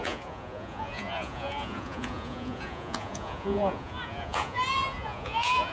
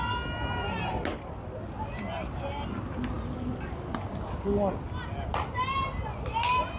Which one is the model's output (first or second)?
first